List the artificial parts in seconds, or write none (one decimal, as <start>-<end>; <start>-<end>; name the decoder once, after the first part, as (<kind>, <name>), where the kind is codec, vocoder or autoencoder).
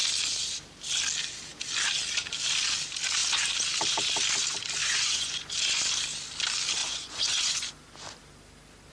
4.8-5.5 (vocoder, Vocos); 6.8-7.7